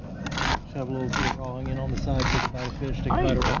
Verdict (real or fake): real